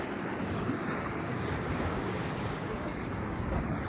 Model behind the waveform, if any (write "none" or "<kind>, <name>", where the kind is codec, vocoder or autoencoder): codec, DAC